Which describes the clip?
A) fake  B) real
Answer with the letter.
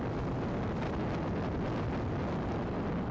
B